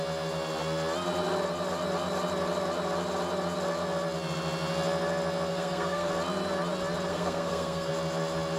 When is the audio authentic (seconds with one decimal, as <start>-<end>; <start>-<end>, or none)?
0.0-5.5; 6.1-7.1; 7.9-8.6